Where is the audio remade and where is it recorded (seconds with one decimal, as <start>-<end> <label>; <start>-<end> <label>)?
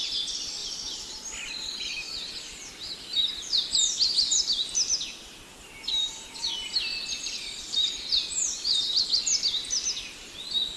0.0-0.6 recorded; 0.6-1.1 remade; 1.1-10.8 recorded